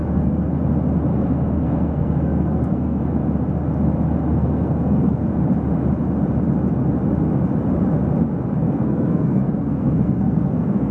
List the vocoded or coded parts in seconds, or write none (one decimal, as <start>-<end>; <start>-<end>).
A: 0.0-0.6; 1.1-3.0; 4.4-5.2; 8.6-10.9